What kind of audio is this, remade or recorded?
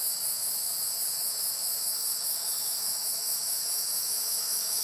remade